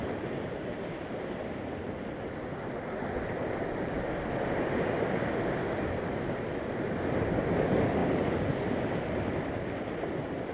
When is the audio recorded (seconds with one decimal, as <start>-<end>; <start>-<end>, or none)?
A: 0.0-10.5